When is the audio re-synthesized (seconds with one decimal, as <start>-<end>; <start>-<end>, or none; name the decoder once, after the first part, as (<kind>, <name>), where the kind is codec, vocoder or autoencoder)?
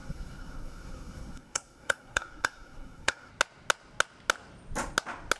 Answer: 0.0-3.3 (codec, SNAC)